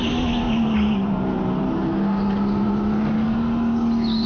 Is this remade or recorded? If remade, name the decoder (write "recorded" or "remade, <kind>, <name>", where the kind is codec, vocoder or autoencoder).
recorded